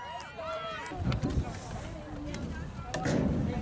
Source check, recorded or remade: recorded